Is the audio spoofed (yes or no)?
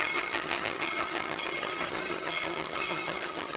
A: yes